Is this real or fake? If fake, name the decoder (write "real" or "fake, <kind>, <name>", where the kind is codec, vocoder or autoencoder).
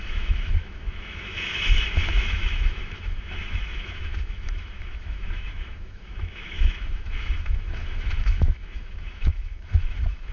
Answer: fake, autoencoder, DAC-VAE